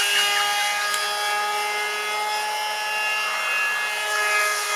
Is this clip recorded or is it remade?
recorded